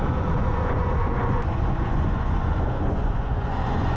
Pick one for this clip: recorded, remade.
remade